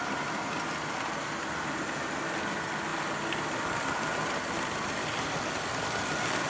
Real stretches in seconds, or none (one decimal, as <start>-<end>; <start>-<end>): 0.0-6.5